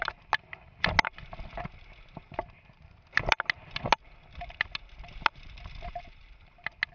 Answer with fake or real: real